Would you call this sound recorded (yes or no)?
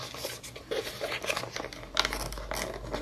yes